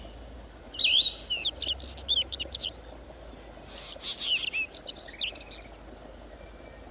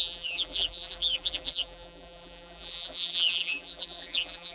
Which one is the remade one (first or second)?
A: second